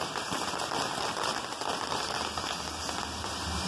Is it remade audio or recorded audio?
recorded